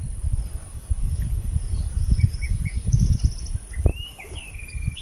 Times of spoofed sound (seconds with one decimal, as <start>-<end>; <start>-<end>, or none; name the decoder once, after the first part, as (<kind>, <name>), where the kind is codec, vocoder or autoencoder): 0.7-3.2 (codec, DAC); 3.9-5.0